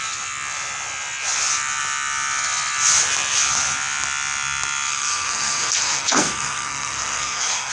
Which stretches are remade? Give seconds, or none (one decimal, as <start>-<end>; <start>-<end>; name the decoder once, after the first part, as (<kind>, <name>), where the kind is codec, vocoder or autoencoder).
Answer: 4.9-7.7 (codec, SNAC)